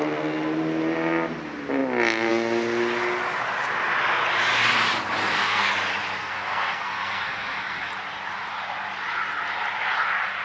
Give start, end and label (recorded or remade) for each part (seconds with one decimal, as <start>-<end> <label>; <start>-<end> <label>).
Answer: 0.0-5.2 recorded; 5.2-5.7 remade; 5.7-6.2 recorded; 6.2-7.9 remade; 7.9-10.4 recorded